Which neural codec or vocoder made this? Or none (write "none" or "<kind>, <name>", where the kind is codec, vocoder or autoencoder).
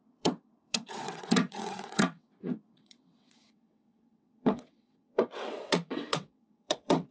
vocoder, WaveNeXt